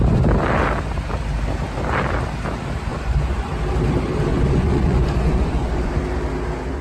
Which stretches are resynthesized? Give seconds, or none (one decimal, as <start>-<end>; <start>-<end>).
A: 2.9-3.5; 4.3-5.9